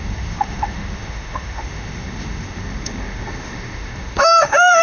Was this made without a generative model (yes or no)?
no